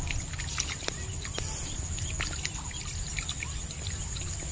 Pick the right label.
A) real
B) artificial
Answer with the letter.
A